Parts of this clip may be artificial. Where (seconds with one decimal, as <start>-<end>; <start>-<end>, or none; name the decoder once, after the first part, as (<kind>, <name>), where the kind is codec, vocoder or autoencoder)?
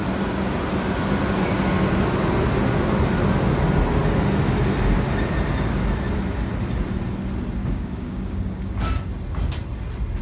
7.6-8.6 (codec, DAC)